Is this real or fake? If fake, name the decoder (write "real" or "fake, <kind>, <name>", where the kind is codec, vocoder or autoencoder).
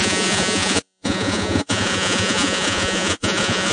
fake, vocoder, Vocos